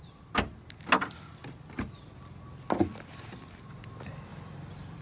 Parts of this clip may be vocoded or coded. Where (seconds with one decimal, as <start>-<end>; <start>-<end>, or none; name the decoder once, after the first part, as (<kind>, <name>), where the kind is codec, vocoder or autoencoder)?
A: 4.3-5.0 (vocoder, BigVGAN v2)